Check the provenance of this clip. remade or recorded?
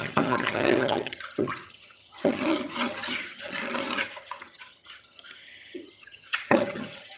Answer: remade